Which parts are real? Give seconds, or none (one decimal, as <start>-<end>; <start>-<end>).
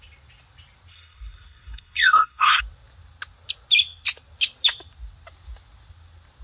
0.0-0.9; 2.6-6.4